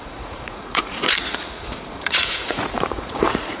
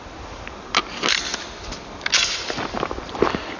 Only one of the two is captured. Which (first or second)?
second